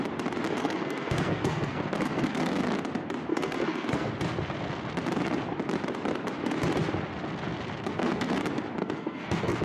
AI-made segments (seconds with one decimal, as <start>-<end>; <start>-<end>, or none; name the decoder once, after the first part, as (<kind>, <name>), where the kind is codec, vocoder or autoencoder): 0.6-2.6 (codec, SNAC); 3.3-4.1; 7.9-8.4; 8.8-9.6